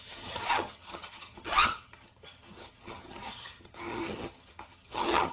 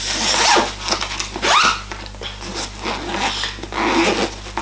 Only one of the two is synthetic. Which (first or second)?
first